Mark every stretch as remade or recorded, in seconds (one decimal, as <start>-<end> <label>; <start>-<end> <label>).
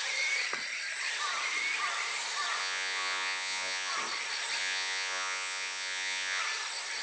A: 0.0-2.6 recorded; 2.6-3.9 remade; 3.9-4.6 recorded; 4.6-6.4 remade; 6.4-7.0 recorded